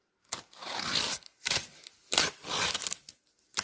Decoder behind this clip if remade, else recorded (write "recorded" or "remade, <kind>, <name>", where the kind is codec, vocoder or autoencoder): recorded